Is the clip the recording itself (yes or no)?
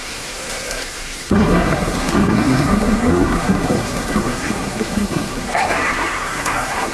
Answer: no